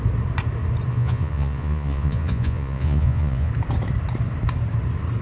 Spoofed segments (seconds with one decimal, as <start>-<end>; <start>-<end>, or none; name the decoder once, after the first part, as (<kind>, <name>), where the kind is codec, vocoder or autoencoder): 0.9-3.5 (vocoder, Vocos)